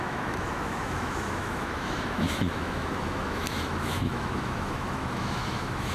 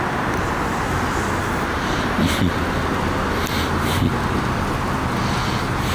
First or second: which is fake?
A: first